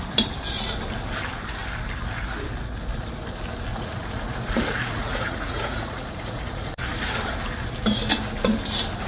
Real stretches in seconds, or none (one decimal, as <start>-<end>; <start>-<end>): 0.0-3.7; 6.8-9.1

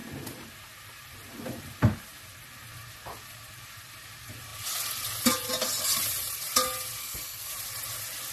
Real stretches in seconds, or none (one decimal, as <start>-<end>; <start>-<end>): 0.0-7.0; 7.5-8.3

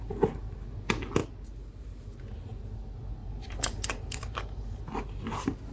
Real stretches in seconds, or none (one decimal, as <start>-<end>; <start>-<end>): 0.0-3.2; 4.8-5.7

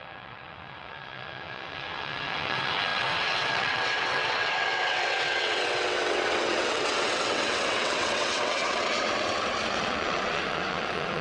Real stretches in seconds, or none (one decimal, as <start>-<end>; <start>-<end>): none

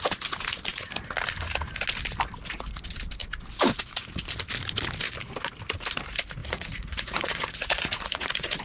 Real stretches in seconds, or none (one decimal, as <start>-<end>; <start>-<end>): 0.0-6.4

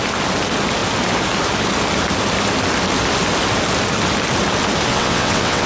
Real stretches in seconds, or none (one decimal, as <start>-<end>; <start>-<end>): 0.0-4.9

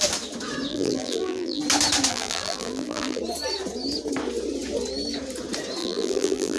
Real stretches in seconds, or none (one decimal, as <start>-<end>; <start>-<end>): 0.0-0.7; 1.6-2.1; 3.2-5.8